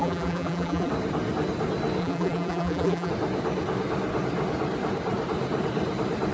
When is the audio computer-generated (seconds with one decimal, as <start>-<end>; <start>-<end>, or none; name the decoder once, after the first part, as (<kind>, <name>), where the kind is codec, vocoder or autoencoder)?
0.0-0.9 (vocoder, BigVGAN v2); 2.0-3.1